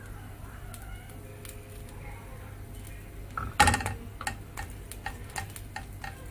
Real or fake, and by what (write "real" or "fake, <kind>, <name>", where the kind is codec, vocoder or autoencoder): real